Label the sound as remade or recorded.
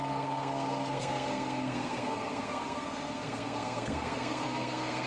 remade